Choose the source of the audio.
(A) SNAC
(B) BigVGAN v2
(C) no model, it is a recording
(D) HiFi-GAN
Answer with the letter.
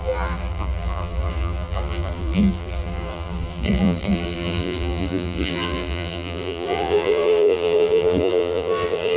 B